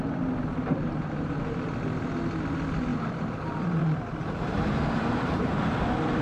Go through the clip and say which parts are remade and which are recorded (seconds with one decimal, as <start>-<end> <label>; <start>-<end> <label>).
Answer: 0.0-0.6 recorded; 0.6-1.3 remade; 1.3-2.9 recorded; 2.9-5.6 remade; 5.6-6.2 recorded